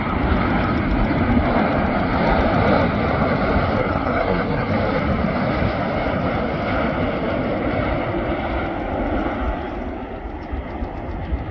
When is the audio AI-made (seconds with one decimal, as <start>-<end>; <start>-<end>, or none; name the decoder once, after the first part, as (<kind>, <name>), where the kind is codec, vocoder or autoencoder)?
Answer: 3.8-4.7 (codec, SNAC)